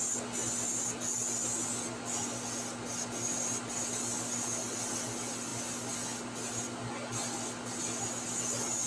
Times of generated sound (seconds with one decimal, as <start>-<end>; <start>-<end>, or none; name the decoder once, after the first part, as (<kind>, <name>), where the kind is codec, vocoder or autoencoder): none